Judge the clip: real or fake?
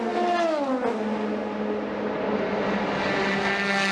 real